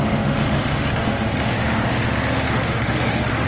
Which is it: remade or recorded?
remade